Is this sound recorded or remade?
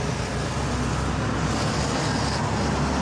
recorded